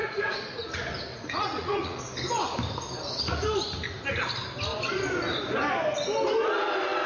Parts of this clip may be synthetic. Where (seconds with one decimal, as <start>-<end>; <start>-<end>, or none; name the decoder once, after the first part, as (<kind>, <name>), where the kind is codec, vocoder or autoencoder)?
0.0-0.7 (vocoder, Vocos); 1.1-2.0

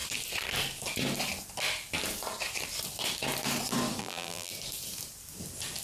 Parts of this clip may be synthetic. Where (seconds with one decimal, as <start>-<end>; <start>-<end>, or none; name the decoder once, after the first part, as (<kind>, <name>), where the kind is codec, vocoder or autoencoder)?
4.0-4.5 (vocoder, BigVGAN v2)

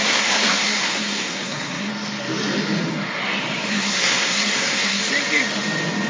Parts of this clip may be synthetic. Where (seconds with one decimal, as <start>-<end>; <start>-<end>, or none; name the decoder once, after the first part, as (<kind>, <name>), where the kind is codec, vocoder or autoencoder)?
0.0-1.9 (codec, SNAC); 3.7-5.0

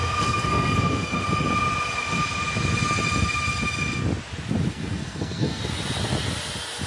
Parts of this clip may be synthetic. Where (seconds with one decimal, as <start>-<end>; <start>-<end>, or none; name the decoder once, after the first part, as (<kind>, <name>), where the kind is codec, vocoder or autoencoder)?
0.0-1.2 (codec, SNAC); 4.7-5.6

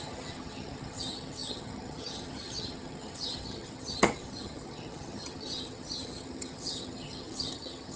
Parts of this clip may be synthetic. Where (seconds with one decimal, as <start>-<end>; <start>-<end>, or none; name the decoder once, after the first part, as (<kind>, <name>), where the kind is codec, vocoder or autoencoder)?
0.0-8.0 (vocoder, HiFi-GAN)

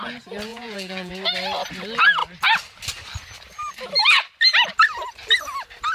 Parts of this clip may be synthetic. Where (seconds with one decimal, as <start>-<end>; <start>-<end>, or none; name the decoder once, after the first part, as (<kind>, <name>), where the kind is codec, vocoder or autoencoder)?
0.5-1.1 (vocoder, Vocos)

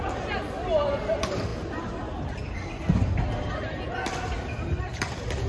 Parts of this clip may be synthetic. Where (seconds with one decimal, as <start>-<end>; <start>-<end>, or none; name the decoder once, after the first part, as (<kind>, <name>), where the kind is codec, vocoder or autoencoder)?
none